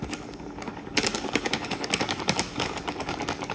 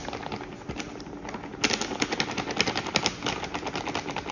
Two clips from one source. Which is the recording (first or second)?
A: second